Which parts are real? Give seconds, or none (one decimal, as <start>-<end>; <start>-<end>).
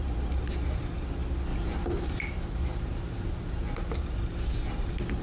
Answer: 0.0-5.2